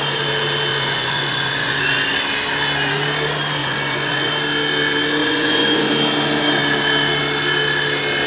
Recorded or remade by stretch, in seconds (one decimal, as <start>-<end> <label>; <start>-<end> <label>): 0.0-0.7 recorded; 0.7-2.1 remade; 2.1-3.6 recorded; 3.6-4.3 remade; 4.3-5.2 recorded; 5.2-5.9 remade; 5.9-8.3 recorded